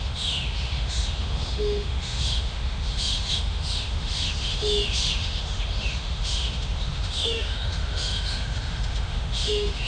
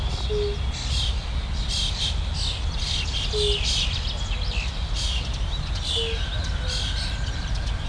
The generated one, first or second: first